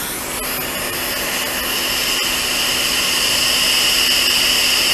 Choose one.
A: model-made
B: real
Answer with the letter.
B